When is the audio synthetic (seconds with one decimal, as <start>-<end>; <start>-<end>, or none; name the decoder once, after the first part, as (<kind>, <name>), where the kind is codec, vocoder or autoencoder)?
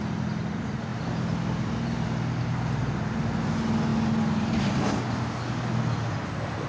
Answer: none